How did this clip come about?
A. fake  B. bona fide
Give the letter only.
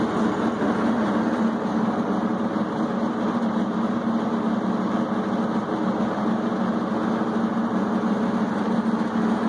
B